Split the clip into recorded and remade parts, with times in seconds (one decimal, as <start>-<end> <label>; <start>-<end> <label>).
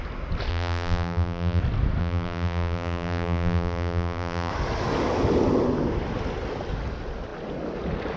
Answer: 0.0-0.5 recorded; 0.5-1.6 remade; 1.6-2.0 recorded; 2.0-4.5 remade; 4.5-8.2 recorded